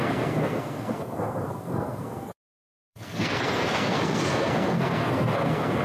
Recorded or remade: remade